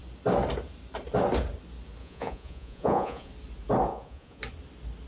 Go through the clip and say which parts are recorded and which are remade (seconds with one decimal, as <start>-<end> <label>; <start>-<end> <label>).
0.0-2.0 recorded; 2.0-3.3 remade; 3.3-3.9 recorded; 3.9-4.4 remade; 4.4-5.1 recorded